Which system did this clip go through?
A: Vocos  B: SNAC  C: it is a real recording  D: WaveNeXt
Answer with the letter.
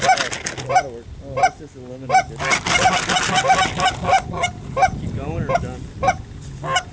C